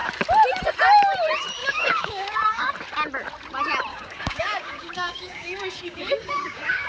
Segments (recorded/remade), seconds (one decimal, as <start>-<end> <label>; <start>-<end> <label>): 0.0-1.6 recorded; 1.6-2.7 remade; 2.7-3.9 recorded; 3.9-6.9 remade